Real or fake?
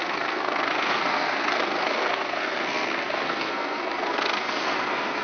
fake